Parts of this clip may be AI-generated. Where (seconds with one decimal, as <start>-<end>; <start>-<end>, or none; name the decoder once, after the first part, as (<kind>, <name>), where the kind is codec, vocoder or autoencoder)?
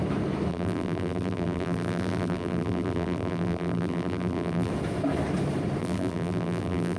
0.5-4.7 (vocoder, BigVGAN v2); 5.8-7.0